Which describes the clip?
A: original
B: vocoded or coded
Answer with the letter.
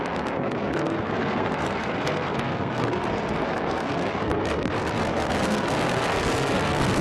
B